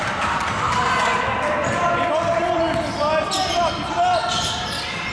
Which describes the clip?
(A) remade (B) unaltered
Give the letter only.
B